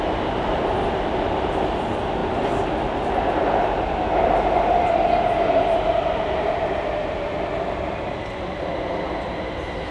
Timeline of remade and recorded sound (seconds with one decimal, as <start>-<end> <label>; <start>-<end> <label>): 0.0-9.9 recorded

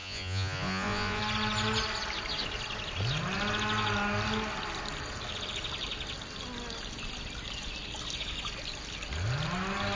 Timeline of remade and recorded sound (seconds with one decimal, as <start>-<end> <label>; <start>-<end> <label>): 0.0-1.2 remade; 1.2-10.0 recorded

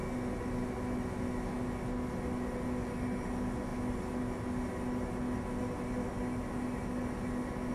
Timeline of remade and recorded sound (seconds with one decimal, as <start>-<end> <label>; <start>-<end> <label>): 0.0-7.7 recorded

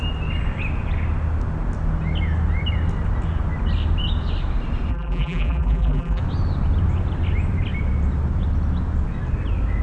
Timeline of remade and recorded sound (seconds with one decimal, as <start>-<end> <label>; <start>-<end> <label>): 0.0-4.9 recorded; 4.9-6.2 remade; 6.2-9.8 recorded

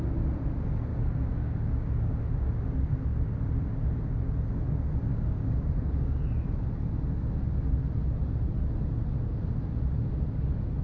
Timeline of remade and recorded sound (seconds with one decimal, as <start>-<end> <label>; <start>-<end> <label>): 0.0-0.9 recorded; 0.9-2.2 remade; 2.2-5.1 recorded; 5.1-6.2 remade; 6.2-10.8 recorded

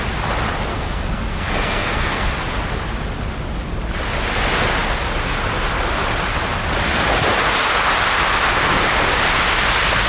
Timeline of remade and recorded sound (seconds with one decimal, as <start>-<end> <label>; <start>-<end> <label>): 0.0-0.7 recorded; 0.7-2.3 remade; 2.3-10.1 recorded

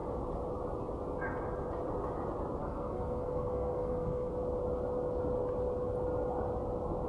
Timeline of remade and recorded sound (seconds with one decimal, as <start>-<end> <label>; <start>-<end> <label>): 0.0-2.6 recorded; 2.6-4.3 remade; 4.3-7.1 recorded

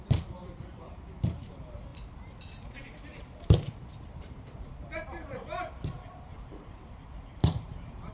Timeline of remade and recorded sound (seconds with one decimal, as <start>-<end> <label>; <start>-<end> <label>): 0.0-8.1 remade